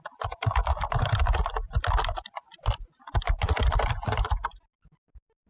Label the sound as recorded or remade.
recorded